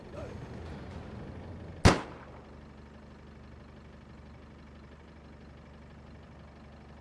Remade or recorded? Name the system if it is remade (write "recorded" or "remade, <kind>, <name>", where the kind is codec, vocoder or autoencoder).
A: recorded